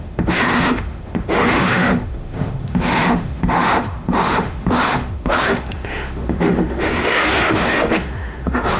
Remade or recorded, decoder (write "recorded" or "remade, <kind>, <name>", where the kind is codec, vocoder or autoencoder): remade, autoencoder, DAC-VAE